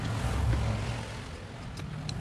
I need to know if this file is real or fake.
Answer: real